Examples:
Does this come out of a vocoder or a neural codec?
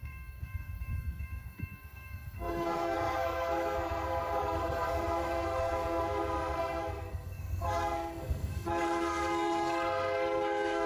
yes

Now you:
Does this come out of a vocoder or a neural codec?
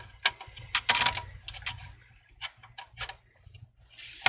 no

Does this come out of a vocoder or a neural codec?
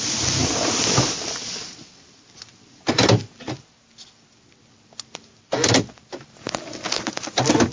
no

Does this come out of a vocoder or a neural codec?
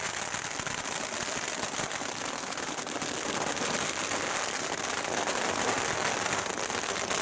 no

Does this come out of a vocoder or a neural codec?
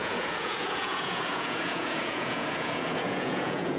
yes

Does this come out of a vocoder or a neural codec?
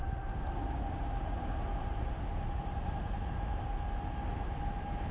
no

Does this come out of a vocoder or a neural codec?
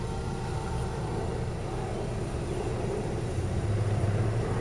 yes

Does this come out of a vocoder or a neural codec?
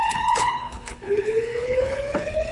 yes